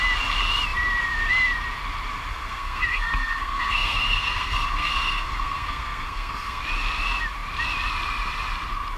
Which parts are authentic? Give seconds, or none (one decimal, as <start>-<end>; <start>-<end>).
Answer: 0.0-2.3; 6.6-9.0